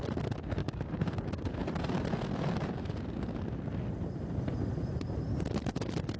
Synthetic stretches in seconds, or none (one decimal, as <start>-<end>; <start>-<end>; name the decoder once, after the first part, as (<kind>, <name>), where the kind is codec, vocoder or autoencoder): 0.6-1.5 (codec, DAC)